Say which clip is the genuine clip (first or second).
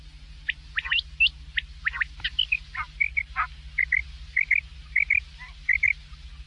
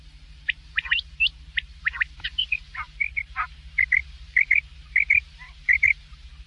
first